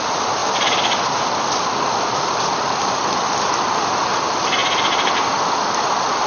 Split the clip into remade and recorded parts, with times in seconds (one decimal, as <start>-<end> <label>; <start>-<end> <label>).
0.0-0.4 recorded; 0.4-4.1 remade; 4.1-4.6 recorded; 4.6-5.3 remade; 5.3-6.3 recorded